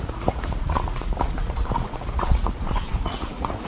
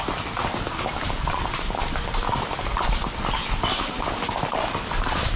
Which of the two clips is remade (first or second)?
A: first